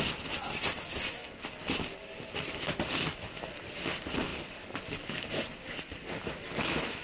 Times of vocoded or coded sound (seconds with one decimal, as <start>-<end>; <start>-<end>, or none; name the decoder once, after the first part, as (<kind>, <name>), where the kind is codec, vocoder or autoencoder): none